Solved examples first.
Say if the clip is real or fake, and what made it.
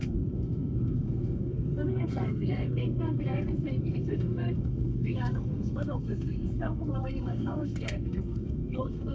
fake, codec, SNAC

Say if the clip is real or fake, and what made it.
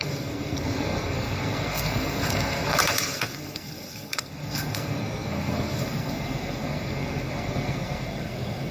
fake, codec, SNAC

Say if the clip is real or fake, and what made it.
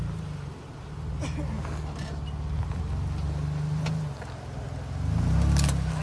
real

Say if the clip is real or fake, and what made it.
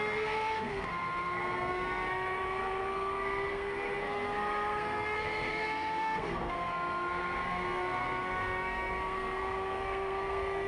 fake, codec, SNAC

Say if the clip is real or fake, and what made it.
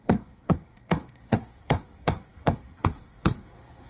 fake, codec, SNAC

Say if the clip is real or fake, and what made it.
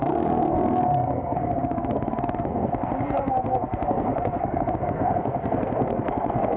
fake, codec, SNAC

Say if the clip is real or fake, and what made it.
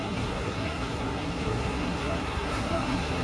fake, codec, SNAC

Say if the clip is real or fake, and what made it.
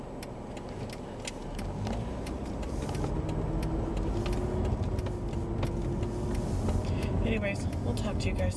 real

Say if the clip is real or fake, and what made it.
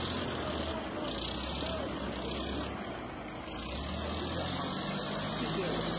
real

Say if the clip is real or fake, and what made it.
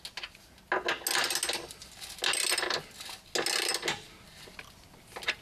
real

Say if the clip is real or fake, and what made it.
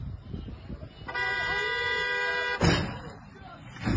real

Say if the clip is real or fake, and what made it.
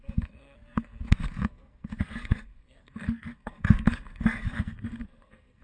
fake, codec, SNAC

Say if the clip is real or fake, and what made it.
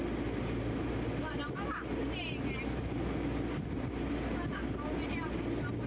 real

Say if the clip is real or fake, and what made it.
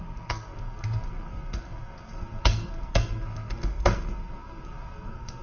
fake, codec, SNAC